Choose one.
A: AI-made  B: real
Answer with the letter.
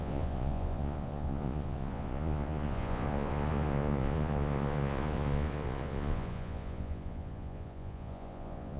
A